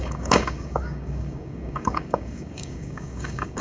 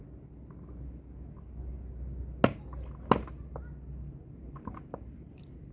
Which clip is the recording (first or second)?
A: second